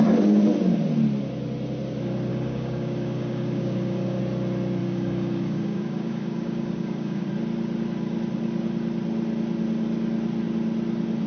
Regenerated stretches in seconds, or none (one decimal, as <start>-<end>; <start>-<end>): 2.3-4.2; 4.8-7.3